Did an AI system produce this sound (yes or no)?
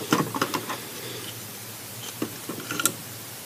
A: no